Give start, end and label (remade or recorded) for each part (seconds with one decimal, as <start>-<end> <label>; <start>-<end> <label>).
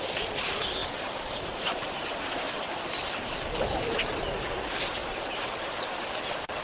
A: 0.0-0.8 recorded; 0.8-2.8 remade; 2.8-5.0 recorded; 5.0-5.7 remade; 5.7-6.6 recorded